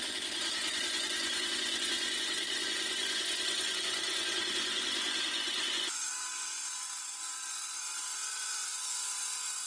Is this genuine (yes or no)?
no